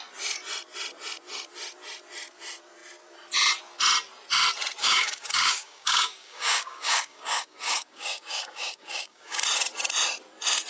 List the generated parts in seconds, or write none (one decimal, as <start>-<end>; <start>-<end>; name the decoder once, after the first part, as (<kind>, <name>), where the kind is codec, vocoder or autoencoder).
4.8-9.4 (codec, DAC)